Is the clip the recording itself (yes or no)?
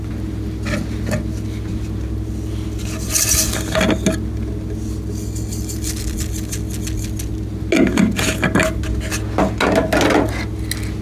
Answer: yes